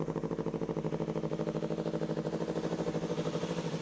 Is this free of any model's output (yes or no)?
yes